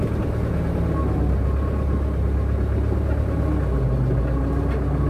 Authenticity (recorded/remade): recorded